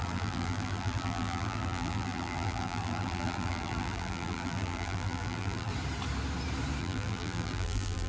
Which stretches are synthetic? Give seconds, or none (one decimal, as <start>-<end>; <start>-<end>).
0.0-5.7; 6.8-8.1

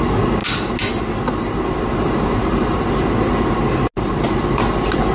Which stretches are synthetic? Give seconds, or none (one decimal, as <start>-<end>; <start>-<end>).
none

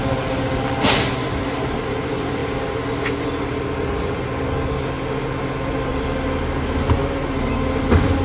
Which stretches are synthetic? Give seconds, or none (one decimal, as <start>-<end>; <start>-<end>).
none